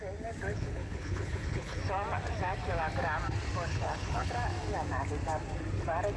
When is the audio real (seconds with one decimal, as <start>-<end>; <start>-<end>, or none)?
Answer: 0.0-0.5; 1.8-3.7; 4.3-6.2